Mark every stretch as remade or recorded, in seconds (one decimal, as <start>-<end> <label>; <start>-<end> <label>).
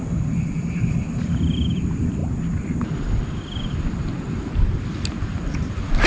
0.0-2.2 remade; 2.2-3.5 recorded; 3.5-6.1 remade